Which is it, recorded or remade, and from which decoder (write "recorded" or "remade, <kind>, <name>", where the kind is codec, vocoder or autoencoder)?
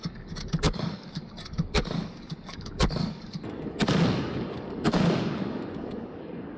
remade, codec, DAC